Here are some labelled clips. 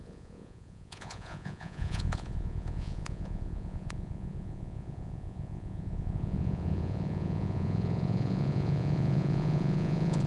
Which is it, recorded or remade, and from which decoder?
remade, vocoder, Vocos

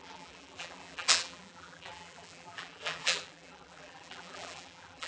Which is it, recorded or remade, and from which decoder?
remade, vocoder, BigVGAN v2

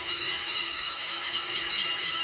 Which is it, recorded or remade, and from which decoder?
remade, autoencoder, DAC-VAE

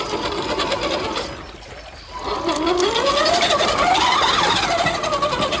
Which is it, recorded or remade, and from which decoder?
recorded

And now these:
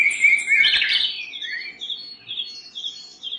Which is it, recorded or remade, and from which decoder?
recorded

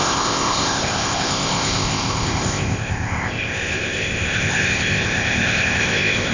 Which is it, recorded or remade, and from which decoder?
remade, codec, ZipCodec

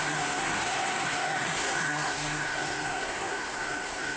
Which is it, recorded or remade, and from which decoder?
remade, codec, SNAC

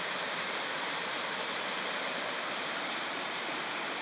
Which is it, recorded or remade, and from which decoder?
remade, vocoder, BigVGAN v2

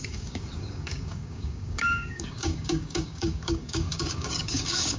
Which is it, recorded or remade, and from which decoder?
remade, codec, DAC